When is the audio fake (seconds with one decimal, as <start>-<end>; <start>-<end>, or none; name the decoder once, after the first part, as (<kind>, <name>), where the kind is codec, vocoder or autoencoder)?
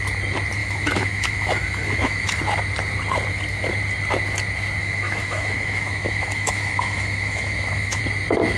0.6-2.4 (autoencoder, DAC-VAE); 4.8-8.0